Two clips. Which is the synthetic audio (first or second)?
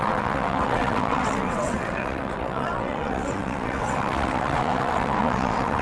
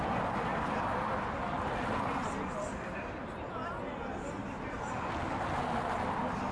first